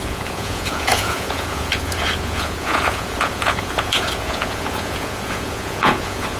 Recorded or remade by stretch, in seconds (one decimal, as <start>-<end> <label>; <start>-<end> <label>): 0.0-6.4 remade